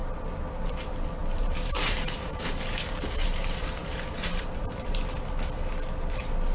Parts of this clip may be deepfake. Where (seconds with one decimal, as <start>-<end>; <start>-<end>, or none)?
1.2-5.1